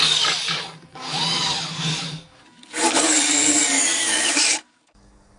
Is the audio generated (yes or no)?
yes